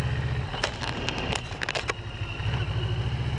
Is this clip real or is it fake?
real